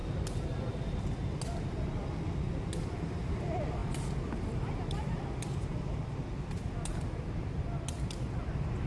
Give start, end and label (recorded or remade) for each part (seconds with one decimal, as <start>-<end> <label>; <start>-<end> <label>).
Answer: 0.0-8.9 recorded